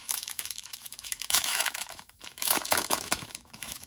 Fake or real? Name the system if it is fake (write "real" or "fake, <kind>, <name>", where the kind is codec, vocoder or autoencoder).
fake, autoencoder, DAC-VAE